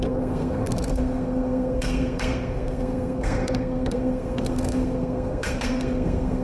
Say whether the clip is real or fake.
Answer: fake